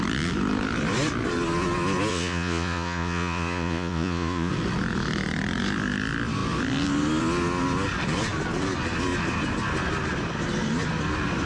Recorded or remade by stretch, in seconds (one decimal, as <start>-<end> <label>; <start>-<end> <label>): 0.0-2.1 recorded; 2.1-4.5 remade; 4.5-11.5 recorded